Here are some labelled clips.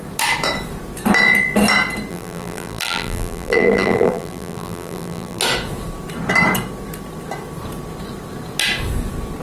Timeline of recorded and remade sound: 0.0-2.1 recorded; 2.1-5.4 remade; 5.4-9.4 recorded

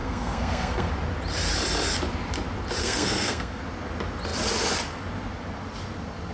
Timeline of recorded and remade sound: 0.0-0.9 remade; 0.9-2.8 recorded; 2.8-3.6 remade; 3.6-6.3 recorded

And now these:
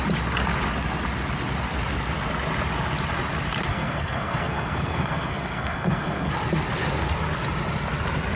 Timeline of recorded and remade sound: 0.0-3.7 recorded; 3.7-6.3 remade; 6.3-8.4 recorded

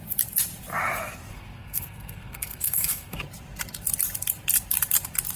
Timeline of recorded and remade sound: 0.0-1.3 recorded; 1.3-3.2 remade; 3.2-5.4 recorded

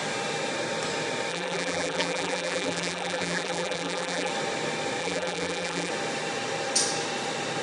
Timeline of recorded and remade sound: 0.0-1.3 recorded; 1.3-4.3 remade; 4.3-5.0 recorded; 5.0-5.9 remade; 5.9-7.6 recorded

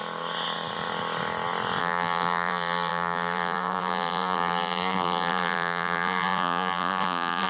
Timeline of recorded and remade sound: 0.0-1.8 recorded; 1.8-7.5 remade